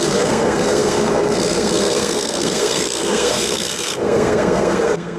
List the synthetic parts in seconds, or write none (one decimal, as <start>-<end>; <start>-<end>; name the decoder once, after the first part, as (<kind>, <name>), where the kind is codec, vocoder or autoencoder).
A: 0.0-5.2 (codec, SNAC)